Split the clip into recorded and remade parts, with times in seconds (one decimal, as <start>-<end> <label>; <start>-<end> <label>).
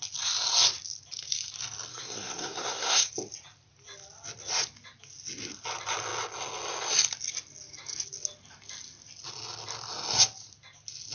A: 0.0-1.9 recorded; 1.9-3.1 remade; 3.1-11.1 recorded